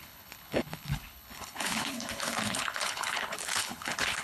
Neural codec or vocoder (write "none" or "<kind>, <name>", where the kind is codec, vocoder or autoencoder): codec, HILCodec